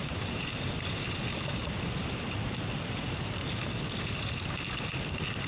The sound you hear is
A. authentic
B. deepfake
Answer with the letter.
A